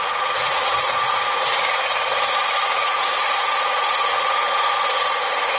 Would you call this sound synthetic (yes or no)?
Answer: yes